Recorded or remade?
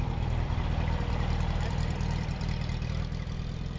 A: remade